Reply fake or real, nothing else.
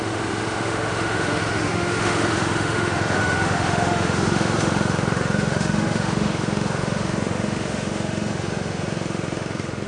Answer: fake